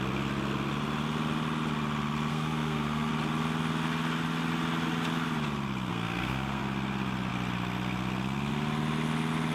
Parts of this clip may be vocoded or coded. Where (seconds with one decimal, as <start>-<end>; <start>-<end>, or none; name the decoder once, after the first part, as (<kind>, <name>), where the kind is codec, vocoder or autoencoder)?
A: 2.3-3.1 (codec, SNAC); 5.9-6.6